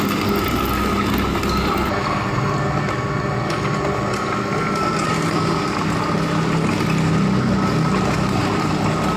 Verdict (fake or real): real